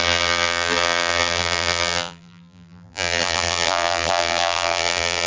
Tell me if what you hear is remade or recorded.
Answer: remade